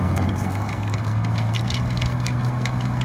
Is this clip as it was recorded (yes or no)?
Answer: no